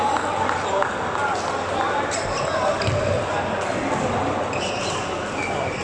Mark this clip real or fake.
real